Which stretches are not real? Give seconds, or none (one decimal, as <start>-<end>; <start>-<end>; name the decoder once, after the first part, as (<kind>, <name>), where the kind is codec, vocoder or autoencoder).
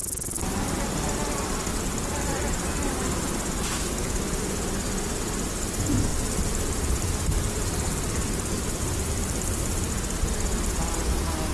1.7-2.3 (vocoder, BigVGAN v2); 6.1-9.9